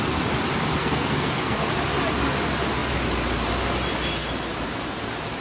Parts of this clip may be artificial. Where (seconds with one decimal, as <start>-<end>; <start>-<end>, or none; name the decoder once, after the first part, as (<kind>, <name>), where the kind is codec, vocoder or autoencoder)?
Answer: 0.8-1.7 (codec, SNAC)